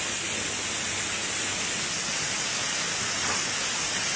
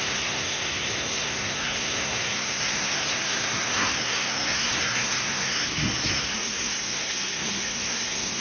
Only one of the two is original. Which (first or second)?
first